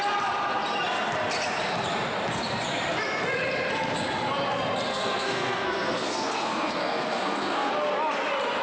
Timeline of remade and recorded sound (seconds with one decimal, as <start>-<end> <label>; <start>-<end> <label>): 0.0-4.9 recorded; 4.9-7.7 remade; 7.7-8.6 recorded